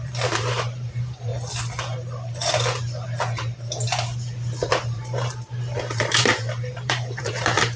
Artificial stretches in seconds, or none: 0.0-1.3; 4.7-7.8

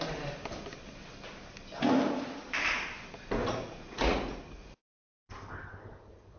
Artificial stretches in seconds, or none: 3.4-5.3

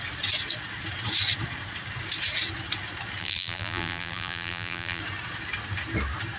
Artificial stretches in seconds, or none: 3.2-5.0

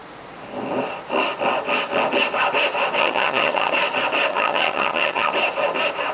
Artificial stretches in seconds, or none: 3.0-3.7; 4.3-5.3

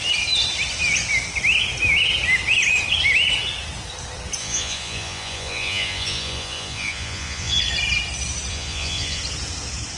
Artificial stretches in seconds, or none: 4.4-7.6; 8.5-9.2

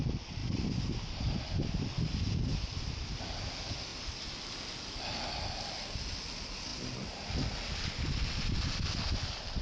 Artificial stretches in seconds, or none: 0.4-1.4; 2.5-3.2; 3.9-4.4